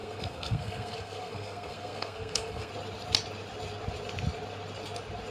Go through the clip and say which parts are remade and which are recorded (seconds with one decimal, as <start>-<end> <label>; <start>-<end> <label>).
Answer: 0.0-2.7 remade; 2.7-5.3 recorded